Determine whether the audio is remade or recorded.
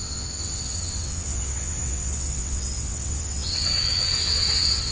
remade